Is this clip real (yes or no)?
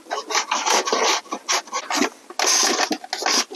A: yes